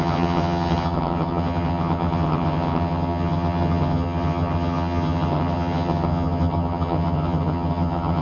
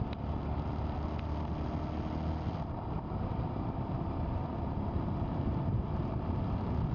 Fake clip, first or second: first